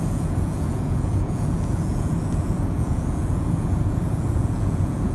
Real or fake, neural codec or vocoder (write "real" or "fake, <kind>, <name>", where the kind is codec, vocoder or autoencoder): fake, vocoder, Vocos